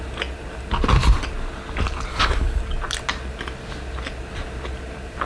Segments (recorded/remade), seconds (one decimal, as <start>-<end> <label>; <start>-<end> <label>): 0.0-2.1 recorded; 2.1-2.6 remade; 2.6-5.3 recorded